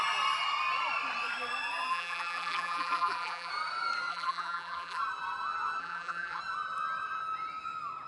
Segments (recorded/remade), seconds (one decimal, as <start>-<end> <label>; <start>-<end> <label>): 0.0-1.9 recorded; 1.9-3.5 remade; 3.5-4.1 recorded; 4.1-5.0 remade; 5.0-5.8 recorded; 5.8-6.4 remade; 6.4-8.1 recorded